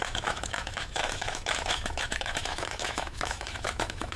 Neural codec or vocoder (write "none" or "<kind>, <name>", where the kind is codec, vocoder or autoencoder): autoencoder, DAC-VAE